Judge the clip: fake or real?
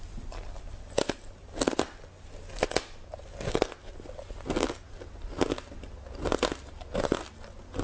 real